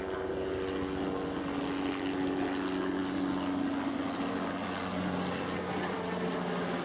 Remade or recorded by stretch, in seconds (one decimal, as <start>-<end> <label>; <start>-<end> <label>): 0.0-6.8 recorded